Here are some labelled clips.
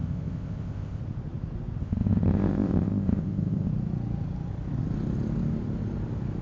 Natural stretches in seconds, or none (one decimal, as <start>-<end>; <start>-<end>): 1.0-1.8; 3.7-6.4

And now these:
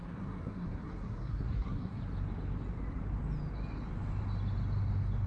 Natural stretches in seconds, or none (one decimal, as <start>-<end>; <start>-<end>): 2.0-5.3

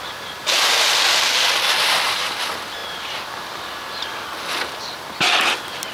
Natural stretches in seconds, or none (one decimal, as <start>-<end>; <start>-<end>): 0.0-5.9